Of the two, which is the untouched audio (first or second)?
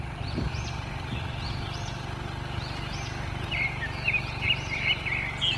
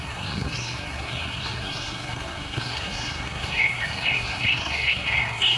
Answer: first